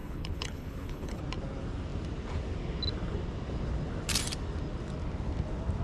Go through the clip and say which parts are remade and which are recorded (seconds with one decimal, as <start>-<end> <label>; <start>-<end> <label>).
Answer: 0.0-1.2 remade; 1.2-5.8 recorded